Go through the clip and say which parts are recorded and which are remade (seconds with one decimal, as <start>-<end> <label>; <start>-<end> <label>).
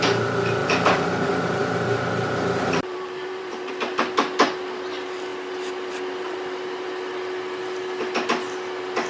0.0-0.6 recorded; 0.6-3.7 remade; 3.7-9.1 recorded